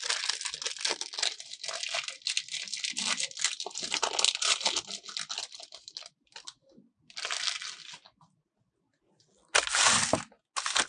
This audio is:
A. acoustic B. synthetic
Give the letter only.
A